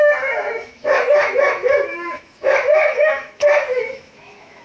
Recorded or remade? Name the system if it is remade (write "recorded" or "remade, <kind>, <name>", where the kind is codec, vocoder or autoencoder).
remade, autoencoder, DAC-VAE